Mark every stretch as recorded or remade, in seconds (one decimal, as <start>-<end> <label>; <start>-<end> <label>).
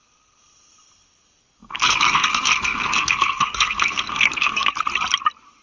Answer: 0.0-1.6 recorded; 1.6-4.7 remade; 4.7-5.6 recorded